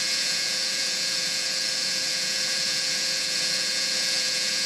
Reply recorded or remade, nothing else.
remade